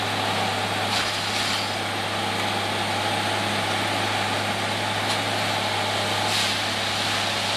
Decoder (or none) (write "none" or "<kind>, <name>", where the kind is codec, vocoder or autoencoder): none